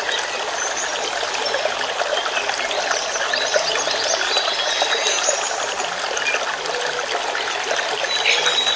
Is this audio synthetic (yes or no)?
no